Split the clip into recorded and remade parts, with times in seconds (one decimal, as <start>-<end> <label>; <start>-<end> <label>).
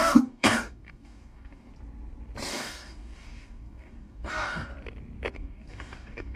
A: 0.0-1.7 remade; 1.7-2.5 recorded; 2.5-4.7 remade; 4.7-5.3 recorded; 5.3-6.4 remade